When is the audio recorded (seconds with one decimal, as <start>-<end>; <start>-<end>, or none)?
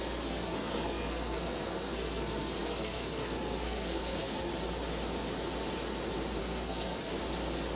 4.5-6.4; 7.1-7.8